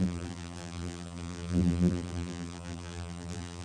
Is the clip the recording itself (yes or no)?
no